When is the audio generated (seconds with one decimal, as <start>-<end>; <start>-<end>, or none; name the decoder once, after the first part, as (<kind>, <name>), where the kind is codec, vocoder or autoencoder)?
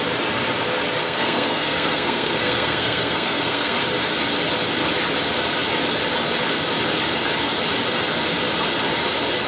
1.0-3.8 (codec, SNAC)